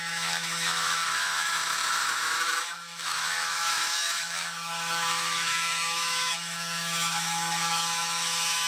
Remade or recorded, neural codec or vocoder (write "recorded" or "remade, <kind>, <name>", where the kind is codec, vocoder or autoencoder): remade, autoencoder, DAC-VAE